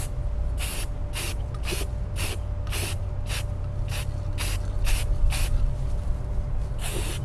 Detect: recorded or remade recorded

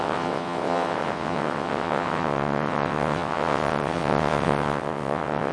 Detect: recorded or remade remade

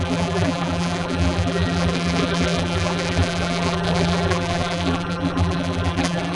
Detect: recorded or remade remade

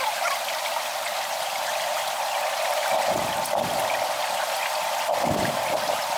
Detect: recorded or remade recorded